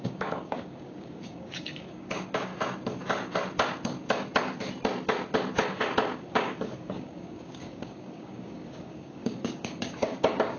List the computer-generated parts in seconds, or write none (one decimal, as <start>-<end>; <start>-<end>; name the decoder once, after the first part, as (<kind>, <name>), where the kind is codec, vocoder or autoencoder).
0.0-2.5 (codec, DAC); 6.3-10.6